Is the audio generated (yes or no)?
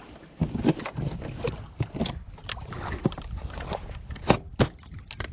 no